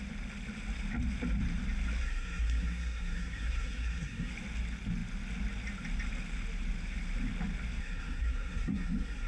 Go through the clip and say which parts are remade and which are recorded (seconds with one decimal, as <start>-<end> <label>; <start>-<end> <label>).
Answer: 0.0-2.0 recorded; 2.0-4.3 remade; 4.3-7.8 recorded; 7.8-9.3 remade